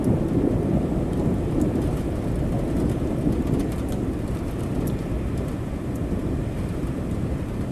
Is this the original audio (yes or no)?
yes